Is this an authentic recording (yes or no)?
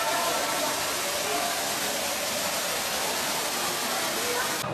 yes